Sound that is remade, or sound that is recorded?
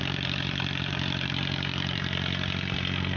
remade